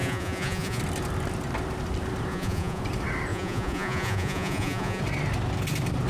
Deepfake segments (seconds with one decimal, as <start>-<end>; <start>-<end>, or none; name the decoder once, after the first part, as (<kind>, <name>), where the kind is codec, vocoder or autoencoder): 0.0-0.8 (vocoder, Vocos); 2.3-2.8; 3.3-5.0